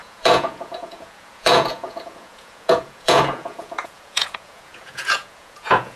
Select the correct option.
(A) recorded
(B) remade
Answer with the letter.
B